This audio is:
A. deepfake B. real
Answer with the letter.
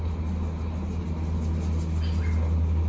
B